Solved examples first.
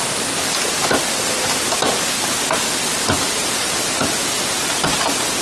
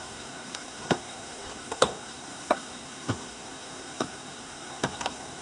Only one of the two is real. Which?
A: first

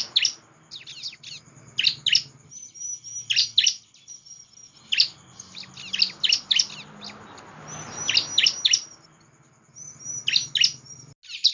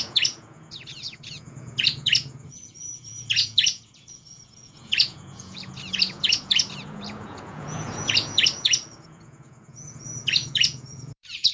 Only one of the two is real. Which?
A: first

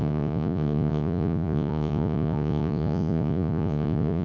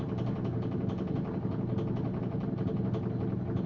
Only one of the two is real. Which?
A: second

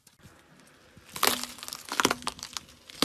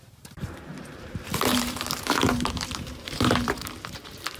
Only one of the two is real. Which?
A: first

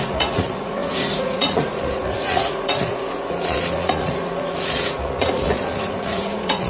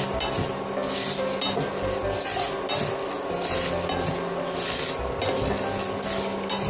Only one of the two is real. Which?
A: second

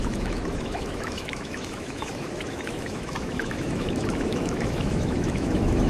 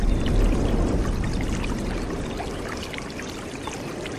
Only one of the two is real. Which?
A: second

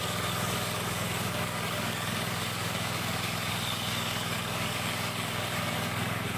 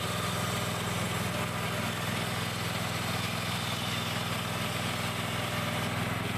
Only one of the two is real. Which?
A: second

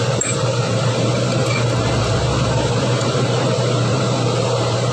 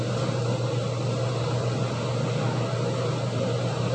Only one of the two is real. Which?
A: second